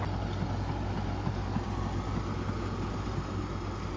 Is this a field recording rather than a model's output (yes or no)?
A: yes